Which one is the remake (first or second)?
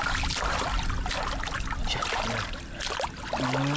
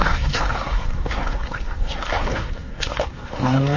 second